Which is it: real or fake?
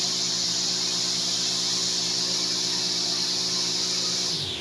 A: real